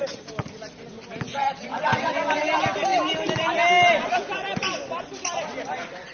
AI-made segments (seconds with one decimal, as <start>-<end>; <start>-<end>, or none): 1.3-2.1